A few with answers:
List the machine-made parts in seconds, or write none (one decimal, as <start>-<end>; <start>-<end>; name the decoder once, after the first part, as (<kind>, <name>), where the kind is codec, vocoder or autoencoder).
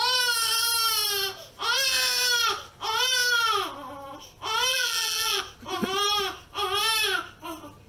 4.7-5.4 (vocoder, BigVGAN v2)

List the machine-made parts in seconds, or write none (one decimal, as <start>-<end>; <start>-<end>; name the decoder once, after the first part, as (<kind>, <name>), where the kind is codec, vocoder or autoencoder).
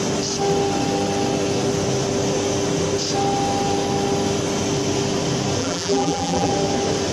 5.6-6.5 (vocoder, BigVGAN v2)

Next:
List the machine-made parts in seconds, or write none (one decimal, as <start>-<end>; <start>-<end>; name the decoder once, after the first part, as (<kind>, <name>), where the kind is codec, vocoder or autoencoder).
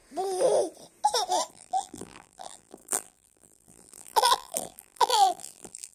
1.5-5.9 (vocoder, BigVGAN v2)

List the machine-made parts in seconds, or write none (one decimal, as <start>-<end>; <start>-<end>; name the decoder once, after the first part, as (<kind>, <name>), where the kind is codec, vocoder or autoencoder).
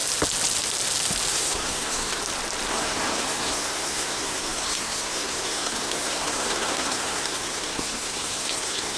1.3-2.2 (codec, SNAC); 2.7-9.0